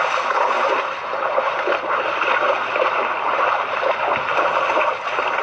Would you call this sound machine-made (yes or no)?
no